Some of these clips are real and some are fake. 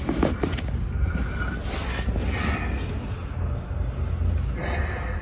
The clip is real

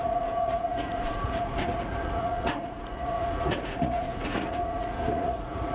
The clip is fake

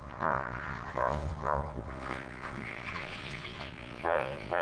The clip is fake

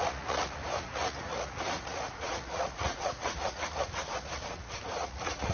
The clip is fake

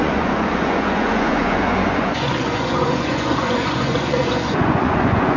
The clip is fake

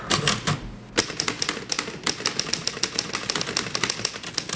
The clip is real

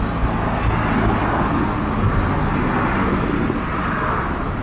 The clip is real